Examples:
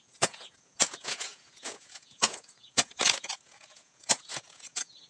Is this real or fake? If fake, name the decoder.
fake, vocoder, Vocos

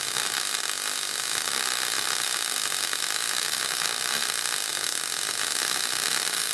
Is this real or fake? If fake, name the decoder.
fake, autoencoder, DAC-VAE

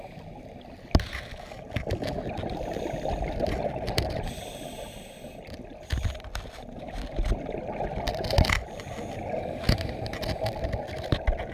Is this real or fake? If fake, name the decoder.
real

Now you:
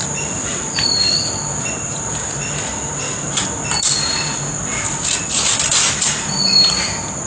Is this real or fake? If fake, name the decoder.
real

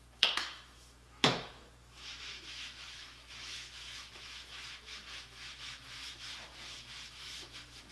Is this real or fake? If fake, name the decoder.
fake, autoencoder, DAC-VAE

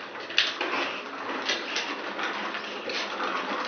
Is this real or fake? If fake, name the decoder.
real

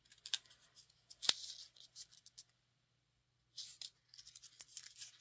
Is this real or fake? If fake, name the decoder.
real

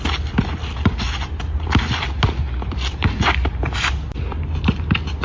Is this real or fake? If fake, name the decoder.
real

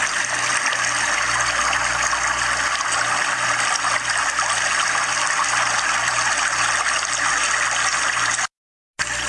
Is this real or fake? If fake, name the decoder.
real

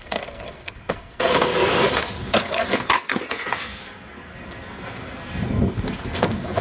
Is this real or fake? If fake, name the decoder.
fake, codec, SNAC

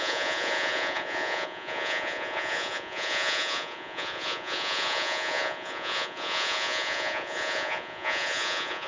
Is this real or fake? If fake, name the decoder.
fake, vocoder, Vocos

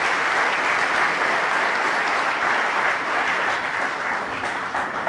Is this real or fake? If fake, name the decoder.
real